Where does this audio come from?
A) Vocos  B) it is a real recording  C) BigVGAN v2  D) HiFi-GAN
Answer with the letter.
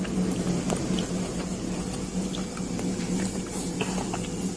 B